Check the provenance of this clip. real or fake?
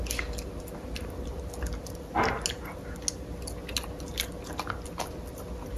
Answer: real